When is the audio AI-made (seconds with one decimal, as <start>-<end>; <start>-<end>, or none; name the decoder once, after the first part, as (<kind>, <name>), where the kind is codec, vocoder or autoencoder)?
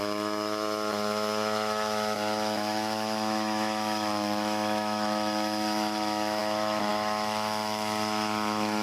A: 0.0-8.8 (autoencoder, DAC-VAE)